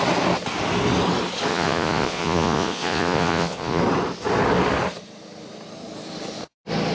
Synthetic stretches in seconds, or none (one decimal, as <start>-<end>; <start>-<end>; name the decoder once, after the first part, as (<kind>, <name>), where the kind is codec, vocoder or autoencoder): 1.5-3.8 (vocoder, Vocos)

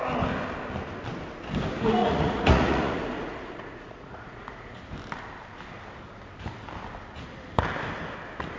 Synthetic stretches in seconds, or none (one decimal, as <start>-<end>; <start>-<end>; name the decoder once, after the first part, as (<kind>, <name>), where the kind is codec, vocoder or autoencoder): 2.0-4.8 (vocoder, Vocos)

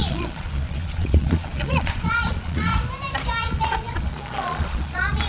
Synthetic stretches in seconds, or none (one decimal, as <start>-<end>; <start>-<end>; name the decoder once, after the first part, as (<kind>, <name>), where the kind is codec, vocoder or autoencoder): 0.0-2.7 (vocoder, Vocos); 3.4-5.3

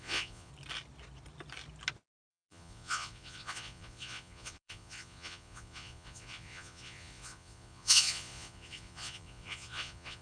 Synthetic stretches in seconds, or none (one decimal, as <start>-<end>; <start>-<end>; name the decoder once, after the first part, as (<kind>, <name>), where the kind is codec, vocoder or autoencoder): 0.0-0.5 (vocoder, Vocos); 2.3-10.2

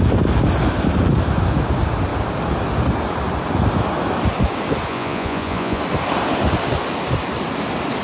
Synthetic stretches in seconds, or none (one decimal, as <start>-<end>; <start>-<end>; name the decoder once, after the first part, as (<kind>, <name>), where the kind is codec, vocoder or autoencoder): 4.9-5.8 (vocoder, Vocos)

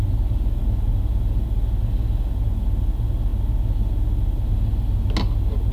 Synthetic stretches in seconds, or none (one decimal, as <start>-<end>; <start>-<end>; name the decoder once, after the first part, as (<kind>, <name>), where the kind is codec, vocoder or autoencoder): none

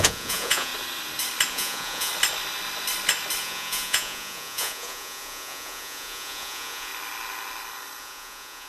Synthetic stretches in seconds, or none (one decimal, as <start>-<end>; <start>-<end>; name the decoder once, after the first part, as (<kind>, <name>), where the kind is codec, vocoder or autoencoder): 0.0-0.7 (vocoder, Vocos); 1.5-2.1; 3.4-6.9; 8.0-8.7

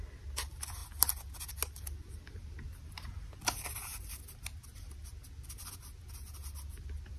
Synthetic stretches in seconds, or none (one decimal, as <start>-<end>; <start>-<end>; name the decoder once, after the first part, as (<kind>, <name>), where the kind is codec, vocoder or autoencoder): none